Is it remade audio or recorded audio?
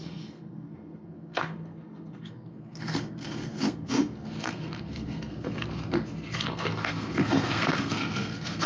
remade